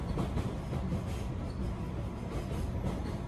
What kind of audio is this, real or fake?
real